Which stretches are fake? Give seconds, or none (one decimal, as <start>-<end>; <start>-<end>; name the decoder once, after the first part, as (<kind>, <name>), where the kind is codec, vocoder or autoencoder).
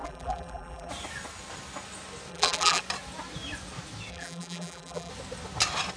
0.0-0.9 (vocoder, BigVGAN v2); 2.3-2.8; 4.1-5.1